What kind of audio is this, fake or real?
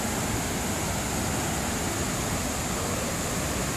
real